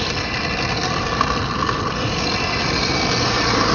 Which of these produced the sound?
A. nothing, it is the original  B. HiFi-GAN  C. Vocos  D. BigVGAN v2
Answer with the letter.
A